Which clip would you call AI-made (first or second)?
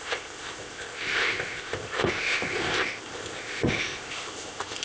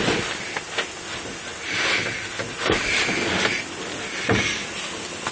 first